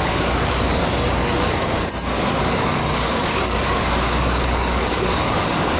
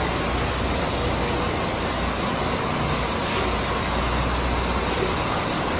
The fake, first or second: first